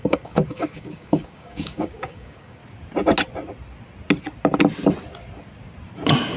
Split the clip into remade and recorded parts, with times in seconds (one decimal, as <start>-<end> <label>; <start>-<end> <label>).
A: 0.0-2.6 remade; 2.6-6.4 recorded